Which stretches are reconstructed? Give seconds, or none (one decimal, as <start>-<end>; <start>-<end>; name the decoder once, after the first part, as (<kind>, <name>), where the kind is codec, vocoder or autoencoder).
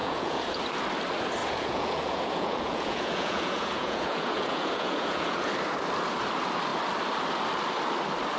0.0-0.6 (vocoder, Vocos); 1.4-5.5